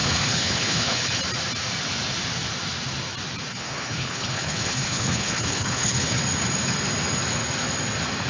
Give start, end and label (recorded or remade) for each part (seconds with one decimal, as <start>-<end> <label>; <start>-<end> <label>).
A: 0.0-1.2 remade; 1.2-3.5 recorded; 3.5-6.2 remade; 6.2-8.3 recorded